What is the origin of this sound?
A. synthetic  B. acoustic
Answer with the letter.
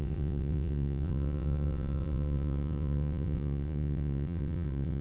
A